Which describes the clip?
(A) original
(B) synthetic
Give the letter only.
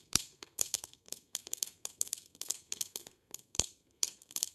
B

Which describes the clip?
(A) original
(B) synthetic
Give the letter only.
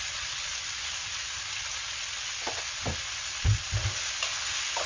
A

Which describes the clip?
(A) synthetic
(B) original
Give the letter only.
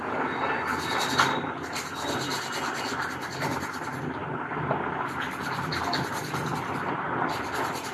B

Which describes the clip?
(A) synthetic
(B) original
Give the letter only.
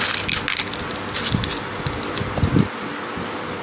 B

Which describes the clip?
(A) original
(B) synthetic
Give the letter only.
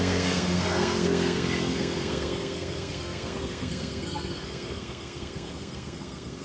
B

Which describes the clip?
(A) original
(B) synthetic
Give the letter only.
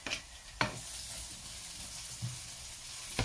A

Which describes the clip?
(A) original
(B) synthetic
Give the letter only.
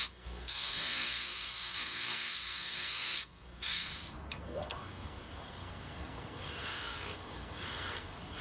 B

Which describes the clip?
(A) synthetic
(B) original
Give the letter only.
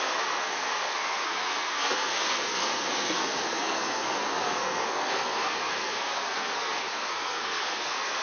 A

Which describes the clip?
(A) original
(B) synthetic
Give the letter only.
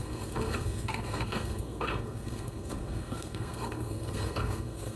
B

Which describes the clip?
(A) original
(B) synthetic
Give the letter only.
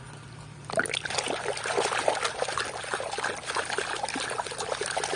A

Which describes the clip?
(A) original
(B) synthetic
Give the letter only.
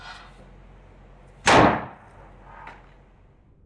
A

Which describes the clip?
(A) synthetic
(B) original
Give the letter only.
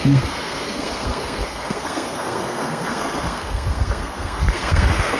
A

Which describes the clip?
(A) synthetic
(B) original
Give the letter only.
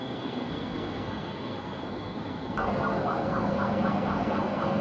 A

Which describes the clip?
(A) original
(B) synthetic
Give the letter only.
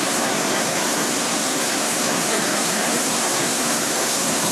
B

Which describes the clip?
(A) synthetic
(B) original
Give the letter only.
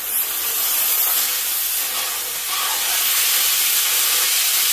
B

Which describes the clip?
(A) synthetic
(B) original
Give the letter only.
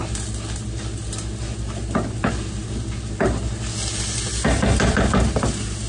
B